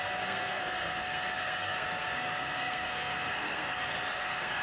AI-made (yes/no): yes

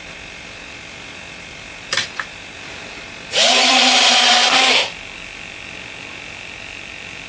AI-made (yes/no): yes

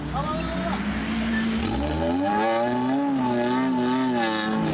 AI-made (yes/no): no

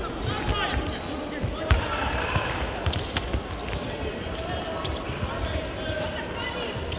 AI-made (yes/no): no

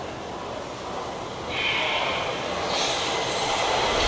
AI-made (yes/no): no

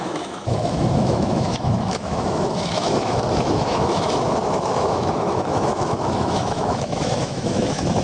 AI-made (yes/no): yes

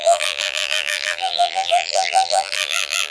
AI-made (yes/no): yes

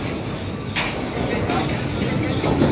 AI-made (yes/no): no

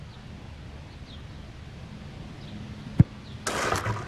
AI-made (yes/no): no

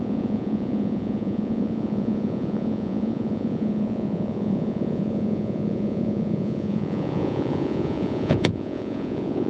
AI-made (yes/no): yes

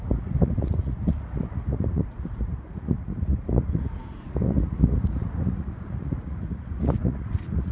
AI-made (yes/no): yes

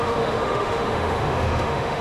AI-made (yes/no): yes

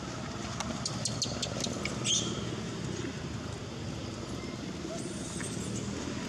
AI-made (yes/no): no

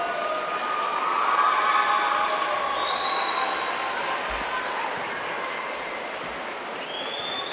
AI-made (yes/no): no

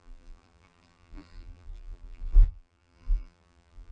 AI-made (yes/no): yes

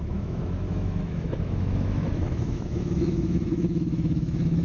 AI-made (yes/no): yes